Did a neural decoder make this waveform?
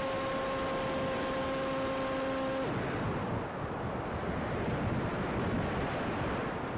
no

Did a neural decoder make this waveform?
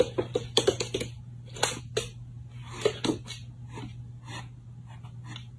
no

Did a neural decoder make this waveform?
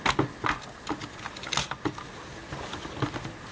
no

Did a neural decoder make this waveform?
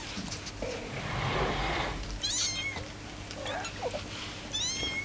no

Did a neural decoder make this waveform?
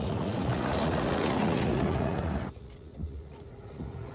yes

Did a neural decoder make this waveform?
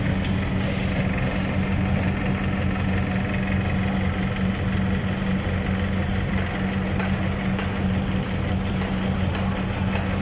no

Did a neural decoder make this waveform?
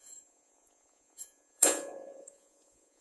yes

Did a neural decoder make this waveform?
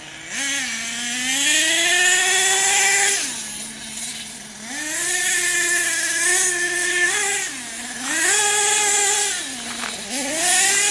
no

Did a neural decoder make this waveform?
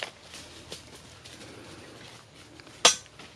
no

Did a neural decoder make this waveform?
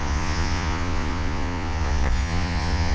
yes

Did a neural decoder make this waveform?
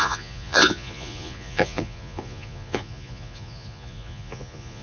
yes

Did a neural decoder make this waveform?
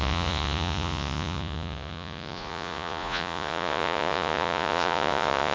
yes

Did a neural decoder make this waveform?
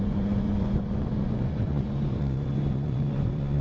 yes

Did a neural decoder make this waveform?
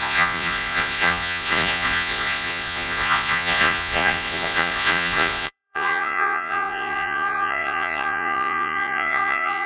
yes